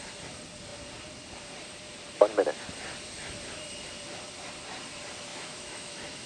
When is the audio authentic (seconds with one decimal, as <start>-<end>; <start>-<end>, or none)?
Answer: 0.0-5.3